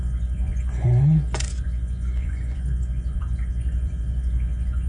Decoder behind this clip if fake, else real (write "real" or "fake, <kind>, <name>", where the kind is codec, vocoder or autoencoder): fake, vocoder, Vocos